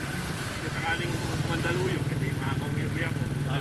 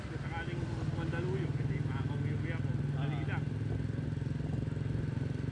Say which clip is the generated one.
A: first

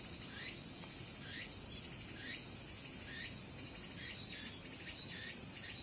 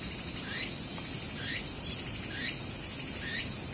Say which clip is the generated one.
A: second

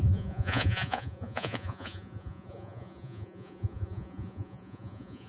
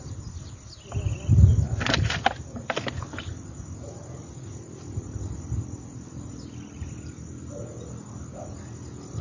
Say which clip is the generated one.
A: first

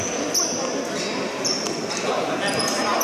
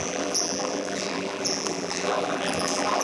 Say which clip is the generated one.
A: second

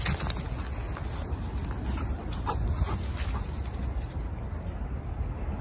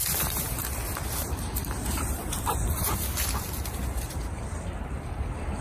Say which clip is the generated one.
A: second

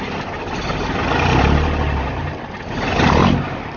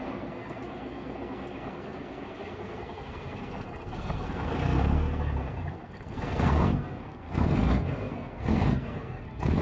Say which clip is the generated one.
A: second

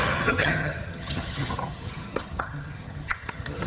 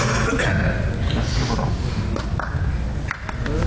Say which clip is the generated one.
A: first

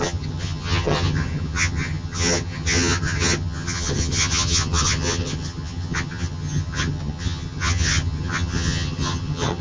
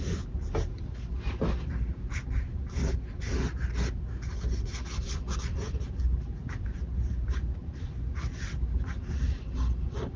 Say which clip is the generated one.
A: first